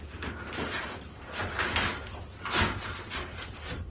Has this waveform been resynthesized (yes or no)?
no